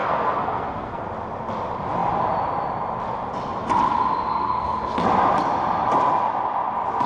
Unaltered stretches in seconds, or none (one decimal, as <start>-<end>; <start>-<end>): 1.0-4.3; 4.8-7.1